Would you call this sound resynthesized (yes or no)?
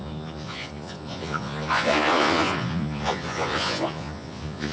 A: yes